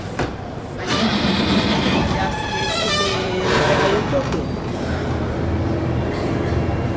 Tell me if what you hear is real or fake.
fake